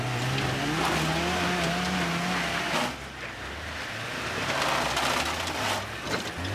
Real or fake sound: real